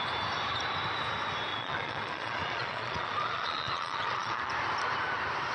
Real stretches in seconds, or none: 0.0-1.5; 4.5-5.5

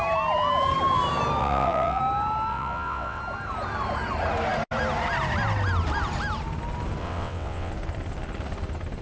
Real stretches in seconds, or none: 0.0-1.4; 2.0-2.5; 3.2-7.0; 7.7-9.0